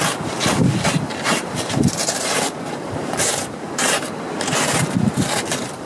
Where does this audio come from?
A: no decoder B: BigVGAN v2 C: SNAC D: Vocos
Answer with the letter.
B